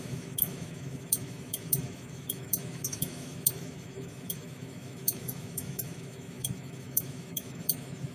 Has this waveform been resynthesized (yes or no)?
yes